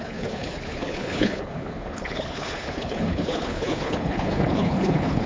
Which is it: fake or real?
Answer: fake